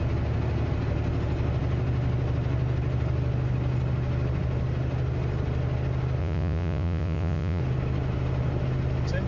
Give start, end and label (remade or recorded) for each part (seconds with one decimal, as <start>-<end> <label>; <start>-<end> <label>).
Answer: 0.0-6.2 recorded; 6.2-7.6 remade; 7.6-9.3 recorded